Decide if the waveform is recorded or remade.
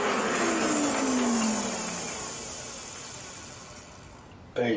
recorded